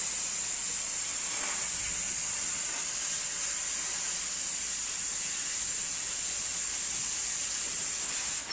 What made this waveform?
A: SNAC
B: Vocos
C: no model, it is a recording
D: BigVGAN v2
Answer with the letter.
C